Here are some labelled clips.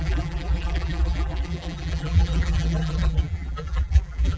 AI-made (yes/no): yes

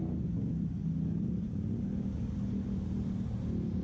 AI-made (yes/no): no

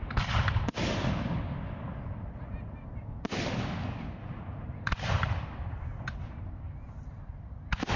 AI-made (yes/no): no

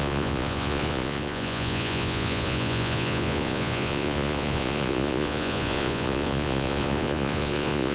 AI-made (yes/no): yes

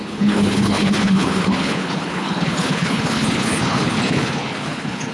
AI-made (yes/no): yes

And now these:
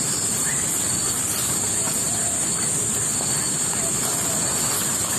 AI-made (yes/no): no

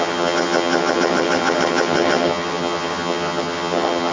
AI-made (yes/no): yes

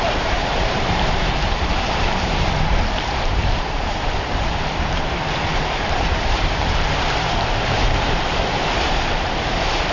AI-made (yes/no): yes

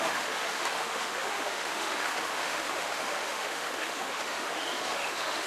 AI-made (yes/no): yes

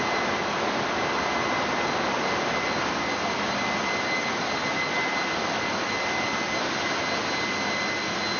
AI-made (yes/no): no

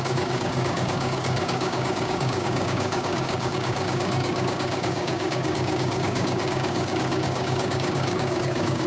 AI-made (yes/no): yes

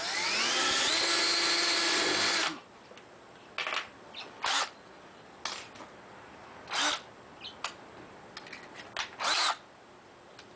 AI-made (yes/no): no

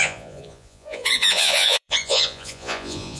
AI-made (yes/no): yes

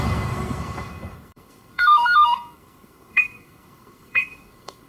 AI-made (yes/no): yes